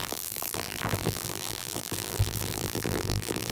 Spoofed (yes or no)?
yes